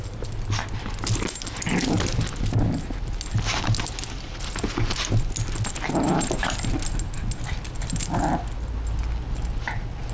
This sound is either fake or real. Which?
real